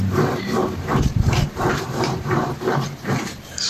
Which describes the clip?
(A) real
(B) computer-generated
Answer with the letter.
B